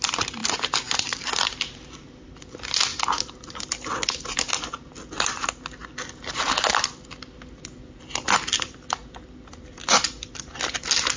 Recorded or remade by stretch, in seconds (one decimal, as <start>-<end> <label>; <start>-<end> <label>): 0.0-11.2 recorded